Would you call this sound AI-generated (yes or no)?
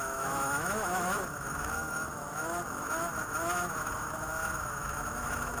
yes